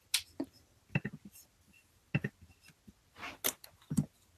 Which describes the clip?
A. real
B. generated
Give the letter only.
A